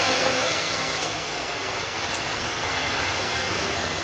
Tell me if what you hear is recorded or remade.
remade